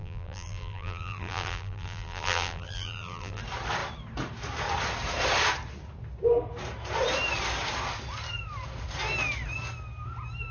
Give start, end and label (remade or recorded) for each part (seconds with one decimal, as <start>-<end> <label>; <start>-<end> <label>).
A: 0.0-3.4 remade; 3.4-10.5 recorded